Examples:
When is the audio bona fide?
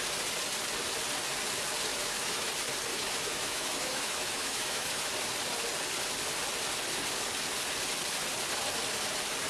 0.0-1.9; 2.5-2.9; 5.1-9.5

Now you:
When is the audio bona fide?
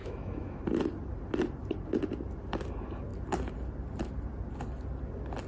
0.6-5.5